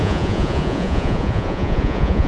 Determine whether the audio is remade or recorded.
remade